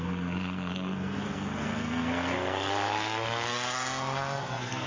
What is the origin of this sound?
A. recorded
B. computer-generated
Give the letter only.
B